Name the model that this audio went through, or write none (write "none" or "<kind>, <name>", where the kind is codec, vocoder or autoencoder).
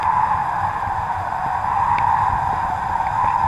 none